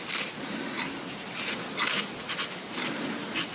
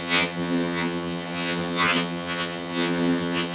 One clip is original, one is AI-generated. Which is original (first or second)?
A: first